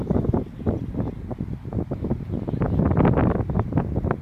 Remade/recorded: recorded